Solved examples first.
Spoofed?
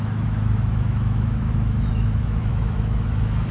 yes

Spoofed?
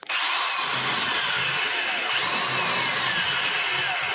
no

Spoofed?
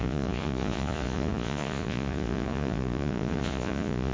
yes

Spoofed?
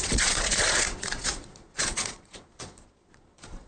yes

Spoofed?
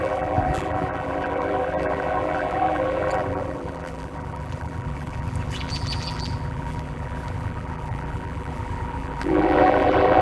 yes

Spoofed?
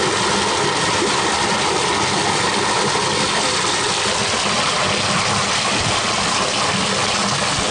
no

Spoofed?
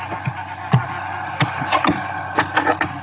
no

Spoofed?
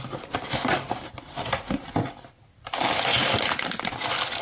no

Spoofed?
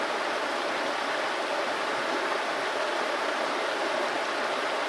no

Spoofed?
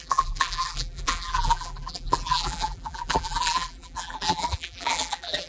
yes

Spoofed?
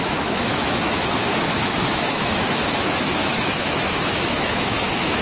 yes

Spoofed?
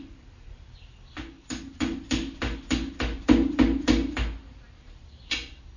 no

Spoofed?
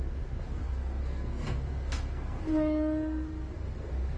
yes